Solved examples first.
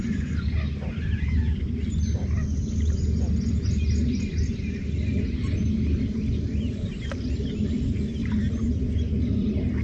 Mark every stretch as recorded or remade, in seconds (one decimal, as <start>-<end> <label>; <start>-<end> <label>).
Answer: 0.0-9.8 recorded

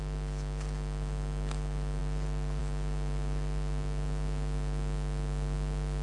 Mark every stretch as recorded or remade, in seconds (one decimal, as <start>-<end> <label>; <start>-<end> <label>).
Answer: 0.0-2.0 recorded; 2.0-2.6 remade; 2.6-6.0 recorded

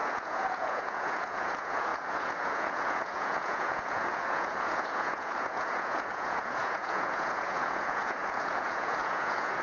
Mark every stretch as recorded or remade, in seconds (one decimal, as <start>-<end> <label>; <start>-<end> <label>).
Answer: 0.0-9.6 remade

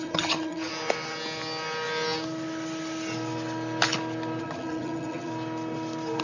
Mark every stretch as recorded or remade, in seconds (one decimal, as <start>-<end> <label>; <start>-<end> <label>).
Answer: 0.0-0.7 remade; 0.7-4.4 recorded; 4.4-5.3 remade; 5.3-6.2 recorded